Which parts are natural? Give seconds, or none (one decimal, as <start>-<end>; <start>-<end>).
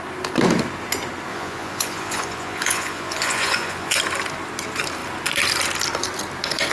0.0-1.3; 4.0-6.7